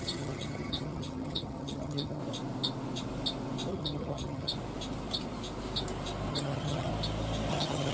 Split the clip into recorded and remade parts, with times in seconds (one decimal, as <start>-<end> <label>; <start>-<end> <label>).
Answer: 0.0-2.2 remade; 2.2-3.7 recorded; 3.7-4.5 remade; 4.5-6.3 recorded; 6.3-6.9 remade; 6.9-7.5 recorded; 7.5-7.9 remade